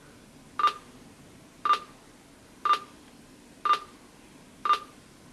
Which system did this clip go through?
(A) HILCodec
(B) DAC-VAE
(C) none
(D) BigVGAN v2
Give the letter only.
C